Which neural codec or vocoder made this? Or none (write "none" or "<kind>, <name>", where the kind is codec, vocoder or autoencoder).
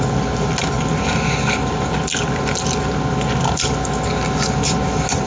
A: none